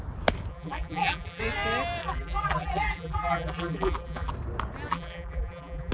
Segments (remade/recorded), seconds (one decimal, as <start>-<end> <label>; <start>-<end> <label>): 0.0-0.5 recorded; 0.5-1.4 remade; 1.4-2.0 recorded; 2.0-4.3 remade; 4.3-4.9 recorded; 4.9-5.9 remade